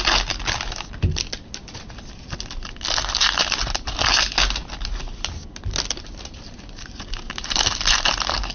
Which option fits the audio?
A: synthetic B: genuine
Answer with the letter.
B